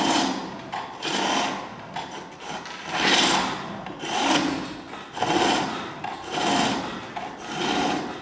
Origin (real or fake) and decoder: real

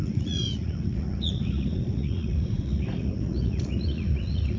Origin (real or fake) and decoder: fake, vocoder, Vocos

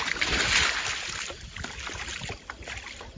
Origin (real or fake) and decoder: real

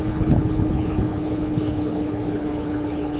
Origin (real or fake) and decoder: fake, codec, HILCodec